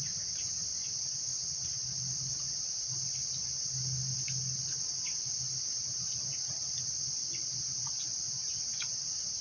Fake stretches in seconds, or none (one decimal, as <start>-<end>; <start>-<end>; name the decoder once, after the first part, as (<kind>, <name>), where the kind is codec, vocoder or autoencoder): none